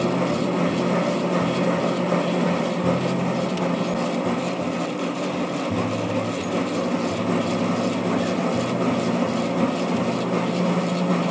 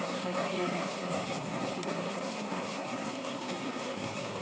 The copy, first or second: second